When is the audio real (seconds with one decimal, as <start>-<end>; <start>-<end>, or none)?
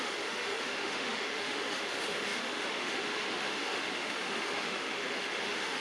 none